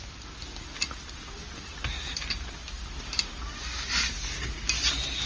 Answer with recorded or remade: recorded